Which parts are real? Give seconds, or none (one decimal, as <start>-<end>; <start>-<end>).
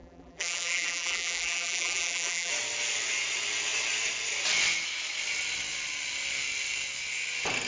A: 2.5-7.7